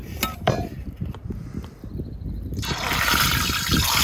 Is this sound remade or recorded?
remade